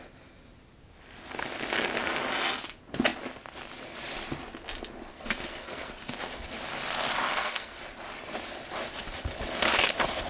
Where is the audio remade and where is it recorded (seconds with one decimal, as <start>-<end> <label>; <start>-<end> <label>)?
0.0-5.1 recorded; 5.1-6.1 remade; 6.1-7.3 recorded; 7.3-7.8 remade; 7.8-10.3 recorded